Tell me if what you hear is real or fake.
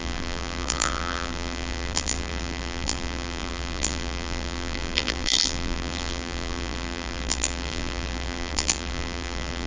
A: fake